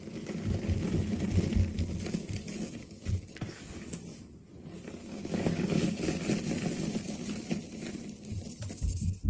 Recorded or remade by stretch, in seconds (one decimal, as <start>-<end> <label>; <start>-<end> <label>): 0.0-2.2 recorded; 2.2-3.9 remade; 3.9-5.0 recorded; 5.0-6.3 remade; 6.3-9.3 recorded